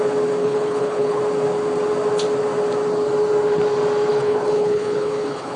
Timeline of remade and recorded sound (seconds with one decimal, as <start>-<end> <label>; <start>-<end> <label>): 0.0-0.4 recorded; 0.4-1.2 remade; 1.2-4.1 recorded; 4.1-5.6 remade